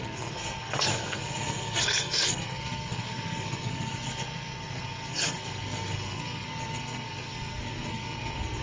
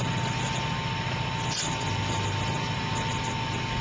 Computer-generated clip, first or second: first